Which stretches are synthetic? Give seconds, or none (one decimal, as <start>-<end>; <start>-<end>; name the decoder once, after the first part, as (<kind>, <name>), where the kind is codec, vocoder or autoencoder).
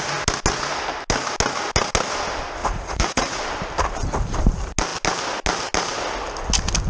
2.6-3.4 (vocoder, Vocos)